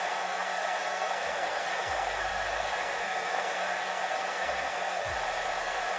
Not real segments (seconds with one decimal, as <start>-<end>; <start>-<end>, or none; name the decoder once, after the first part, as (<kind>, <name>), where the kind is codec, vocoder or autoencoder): 0.0-5.1 (codec, SNAC); 5.6-6.0